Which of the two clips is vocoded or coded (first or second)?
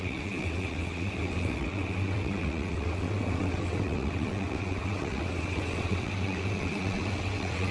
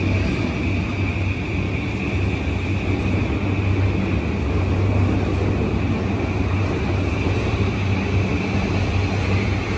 first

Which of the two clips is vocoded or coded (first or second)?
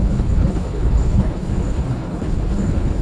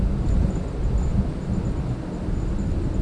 first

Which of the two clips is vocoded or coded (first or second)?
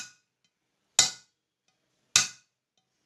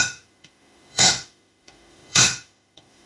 second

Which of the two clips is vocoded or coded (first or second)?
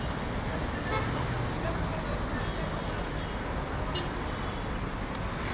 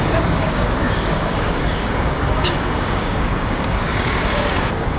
second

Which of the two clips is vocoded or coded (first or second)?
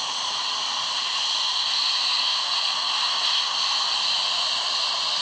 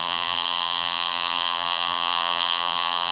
second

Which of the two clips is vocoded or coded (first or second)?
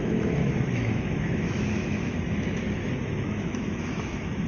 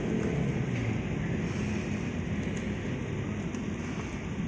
first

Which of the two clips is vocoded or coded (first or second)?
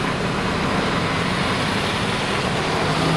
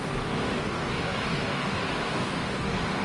second